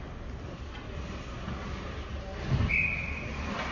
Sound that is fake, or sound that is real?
real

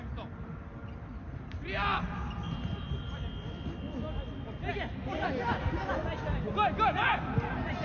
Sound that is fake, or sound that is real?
real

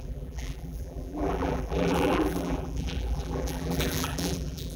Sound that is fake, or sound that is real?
fake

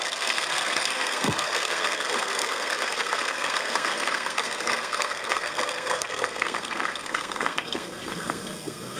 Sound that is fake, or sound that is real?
fake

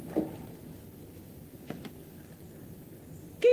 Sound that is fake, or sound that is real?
real